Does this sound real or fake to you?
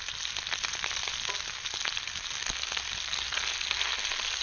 real